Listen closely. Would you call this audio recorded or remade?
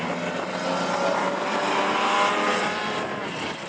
recorded